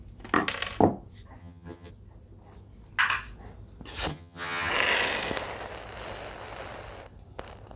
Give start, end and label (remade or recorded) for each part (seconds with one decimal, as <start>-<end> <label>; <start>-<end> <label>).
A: 0.0-1.4 recorded; 1.4-1.9 remade; 1.9-4.1 recorded; 4.1-4.7 remade; 4.7-7.8 recorded